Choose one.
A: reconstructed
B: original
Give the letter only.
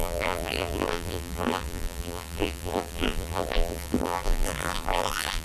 A